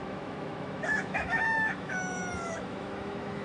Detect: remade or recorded remade